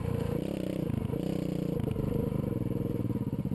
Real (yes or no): yes